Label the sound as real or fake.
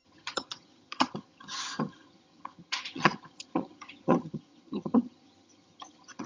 fake